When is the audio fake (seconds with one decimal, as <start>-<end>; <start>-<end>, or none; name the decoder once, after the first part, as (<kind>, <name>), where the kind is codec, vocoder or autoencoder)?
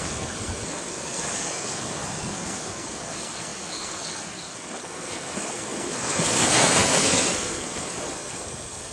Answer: 0.0-8.9 (codec, SNAC)